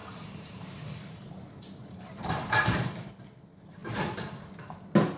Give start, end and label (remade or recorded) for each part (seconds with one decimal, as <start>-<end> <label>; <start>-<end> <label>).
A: 0.0-3.1 remade; 3.1-3.8 recorded; 3.8-4.4 remade; 4.4-5.2 recorded